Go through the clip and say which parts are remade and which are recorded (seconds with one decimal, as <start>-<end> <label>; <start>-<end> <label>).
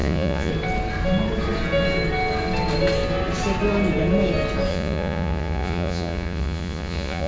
0.0-0.5 remade; 0.5-4.7 recorded; 4.7-7.3 remade